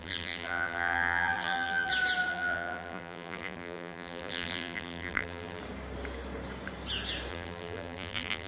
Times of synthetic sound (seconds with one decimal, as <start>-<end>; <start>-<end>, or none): 0.0-1.9; 2.3-5.6; 7.3-8.5